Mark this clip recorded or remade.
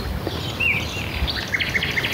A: recorded